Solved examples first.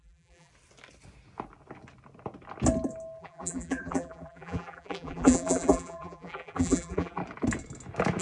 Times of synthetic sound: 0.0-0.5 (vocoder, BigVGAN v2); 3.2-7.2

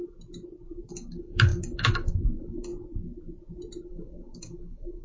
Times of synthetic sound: 0.9-2.7 (codec, DAC); 3.9-5.0

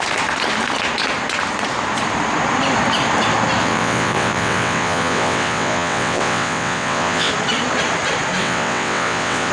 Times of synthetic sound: 3.6-7.3 (vocoder, WaveNeXt); 8.4-9.5

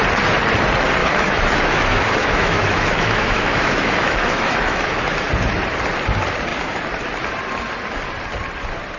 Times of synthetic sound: 1.0-5.3 (autoencoder, DAC-VAE)

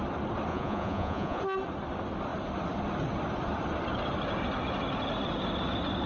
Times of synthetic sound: 0.5-1.4 (vocoder, Vocos)

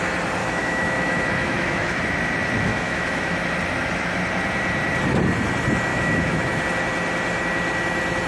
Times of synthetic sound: 0.4-2.0 (autoencoder, DAC-VAE); 2.7-3.4; 5.9-6.6

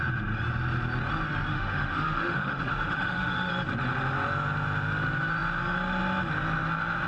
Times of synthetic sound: 1.5-3.5 (autoencoder, DAC-VAE)

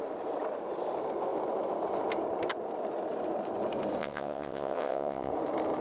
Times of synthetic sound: 4.0-5.3 (vocoder, WaveNeXt)